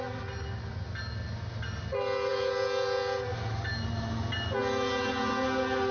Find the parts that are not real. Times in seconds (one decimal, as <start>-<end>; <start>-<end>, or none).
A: none